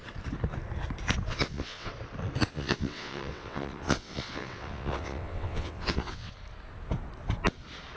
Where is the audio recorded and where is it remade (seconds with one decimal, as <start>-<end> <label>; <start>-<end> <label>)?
0.0-1.3 recorded; 1.3-1.9 remade; 1.9-2.5 recorded; 2.5-6.3 remade; 6.3-8.0 recorded